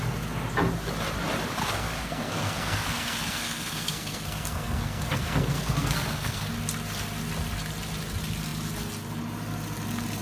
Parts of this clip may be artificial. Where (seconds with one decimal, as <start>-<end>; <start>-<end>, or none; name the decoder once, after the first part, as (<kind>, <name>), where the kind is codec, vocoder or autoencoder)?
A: 1.6-6.5 (codec, SNAC)